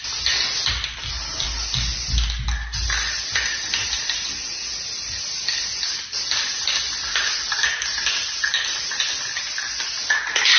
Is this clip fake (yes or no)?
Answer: no